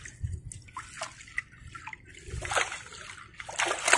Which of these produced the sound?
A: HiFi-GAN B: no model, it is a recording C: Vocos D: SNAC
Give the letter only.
B